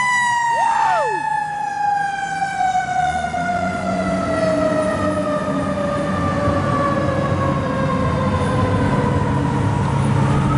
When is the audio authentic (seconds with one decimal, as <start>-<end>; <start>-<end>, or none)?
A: 0.0-2.4; 4.2-10.6